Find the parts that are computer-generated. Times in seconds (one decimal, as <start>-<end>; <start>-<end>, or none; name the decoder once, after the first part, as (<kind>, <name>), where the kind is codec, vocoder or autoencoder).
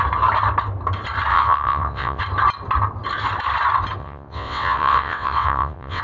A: 1.3-2.2 (vocoder, WaveNeXt); 4.0-6.0